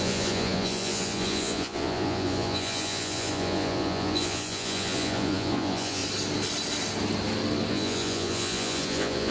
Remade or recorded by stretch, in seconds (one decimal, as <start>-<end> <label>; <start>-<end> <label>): 0.0-6.0 remade; 6.0-7.7 recorded; 7.7-9.3 remade